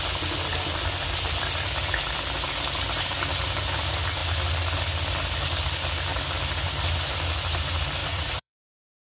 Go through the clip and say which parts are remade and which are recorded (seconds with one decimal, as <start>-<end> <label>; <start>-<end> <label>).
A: 0.0-8.0 recorded; 8.0-8.7 remade; 8.7-9.1 recorded

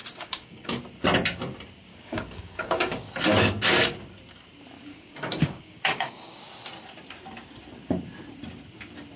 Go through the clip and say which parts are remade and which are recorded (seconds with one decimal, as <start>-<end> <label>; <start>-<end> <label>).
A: 0.0-0.8 remade; 0.8-1.9 recorded; 1.9-3.1 remade; 3.1-4.9 recorded; 4.9-6.4 remade; 6.4-9.2 recorded

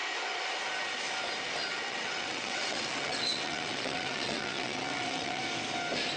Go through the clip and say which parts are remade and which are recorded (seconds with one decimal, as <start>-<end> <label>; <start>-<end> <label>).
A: 0.0-1.7 recorded; 1.7-5.4 remade; 5.4-6.2 recorded

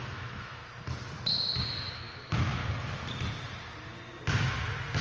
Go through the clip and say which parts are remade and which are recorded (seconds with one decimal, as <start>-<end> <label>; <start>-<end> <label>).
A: 0.0-0.6 remade; 0.6-1.9 recorded; 1.9-2.6 remade; 2.6-5.0 recorded

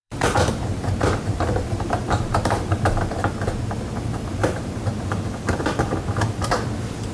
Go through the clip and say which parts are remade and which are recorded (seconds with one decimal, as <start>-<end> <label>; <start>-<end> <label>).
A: 0.0-3.2 remade; 3.2-4.4 recorded; 4.4-5.6 remade; 5.6-7.1 recorded

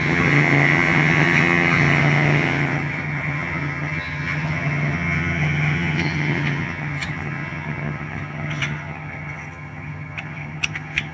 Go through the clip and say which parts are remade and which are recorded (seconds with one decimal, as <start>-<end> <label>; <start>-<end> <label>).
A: 0.0-11.1 remade